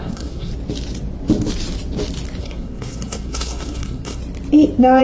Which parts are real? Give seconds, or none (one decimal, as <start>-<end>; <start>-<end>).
0.5-2.4; 4.2-5.0